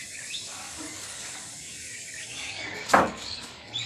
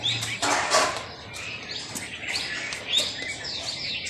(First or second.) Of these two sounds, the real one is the second